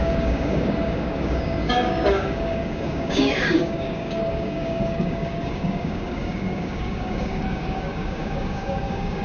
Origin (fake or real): fake